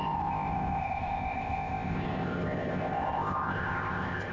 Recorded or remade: remade